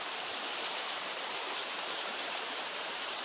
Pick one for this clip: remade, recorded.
remade